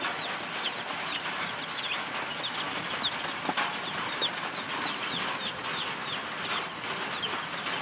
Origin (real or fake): real